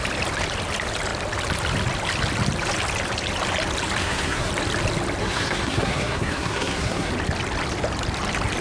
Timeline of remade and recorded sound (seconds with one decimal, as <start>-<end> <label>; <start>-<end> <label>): 0.0-4.0 recorded; 4.0-4.5 remade; 4.5-5.2 recorded; 5.2-7.1 remade; 7.1-8.6 recorded